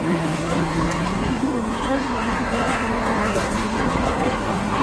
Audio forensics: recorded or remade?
remade